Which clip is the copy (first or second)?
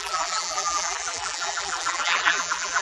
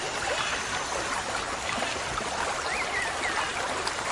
first